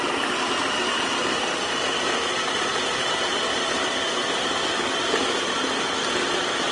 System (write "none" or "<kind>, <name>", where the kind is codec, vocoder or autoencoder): none